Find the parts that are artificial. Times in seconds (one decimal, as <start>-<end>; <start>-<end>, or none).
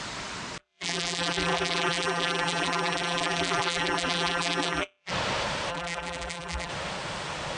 0.6-5.1; 5.7-6.7